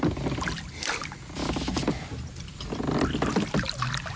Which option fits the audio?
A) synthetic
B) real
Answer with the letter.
B